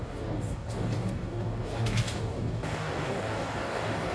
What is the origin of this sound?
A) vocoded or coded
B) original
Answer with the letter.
A